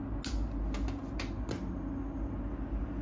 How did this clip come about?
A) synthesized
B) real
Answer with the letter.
B